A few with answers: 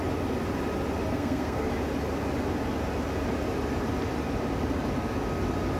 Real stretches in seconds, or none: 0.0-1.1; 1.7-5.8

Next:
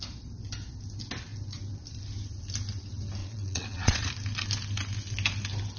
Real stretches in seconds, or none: 0.0-3.2; 4.1-5.8

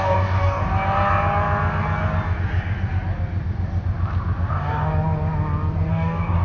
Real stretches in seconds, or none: 0.7-4.5; 4.9-5.9